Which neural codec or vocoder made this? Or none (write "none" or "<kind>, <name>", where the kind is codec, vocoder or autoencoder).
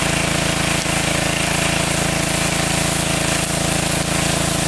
none